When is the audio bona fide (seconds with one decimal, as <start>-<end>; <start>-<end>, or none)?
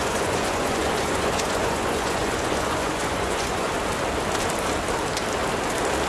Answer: 3.7-6.1